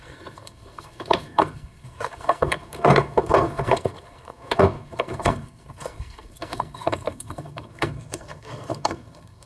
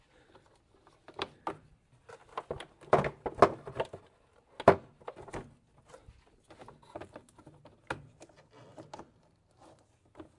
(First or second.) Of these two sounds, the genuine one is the second